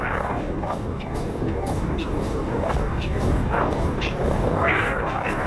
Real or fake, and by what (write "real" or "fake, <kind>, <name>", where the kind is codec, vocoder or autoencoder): fake, codec, DAC